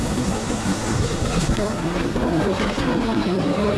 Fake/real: fake